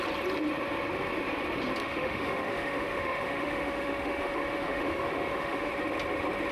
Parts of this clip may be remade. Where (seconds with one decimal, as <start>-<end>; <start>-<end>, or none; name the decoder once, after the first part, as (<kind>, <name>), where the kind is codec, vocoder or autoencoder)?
1.8-5.7 (autoencoder, DAC-VAE)